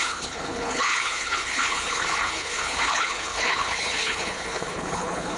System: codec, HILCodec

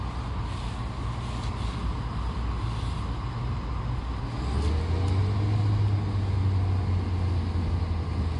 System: none